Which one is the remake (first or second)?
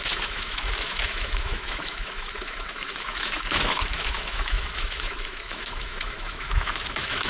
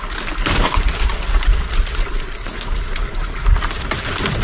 first